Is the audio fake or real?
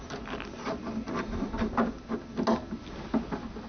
real